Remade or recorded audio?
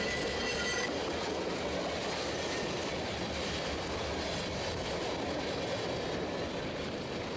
recorded